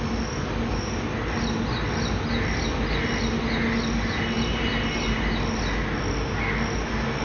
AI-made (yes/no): no